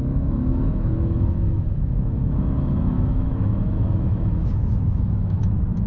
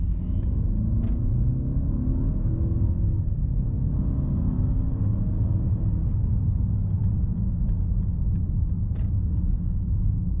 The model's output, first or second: first